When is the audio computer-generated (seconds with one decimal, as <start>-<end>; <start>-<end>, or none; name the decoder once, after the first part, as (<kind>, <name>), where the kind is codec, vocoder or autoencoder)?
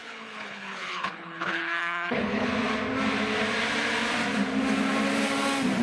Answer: 0.0-2.5 (codec, HILCodec)